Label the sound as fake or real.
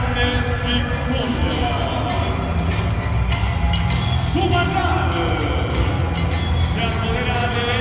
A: real